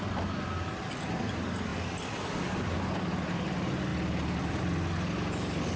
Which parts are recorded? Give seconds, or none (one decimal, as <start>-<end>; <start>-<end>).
0.0-5.8